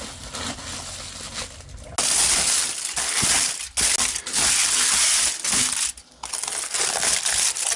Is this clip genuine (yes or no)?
yes